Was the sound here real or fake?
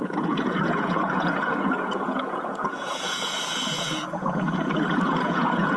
fake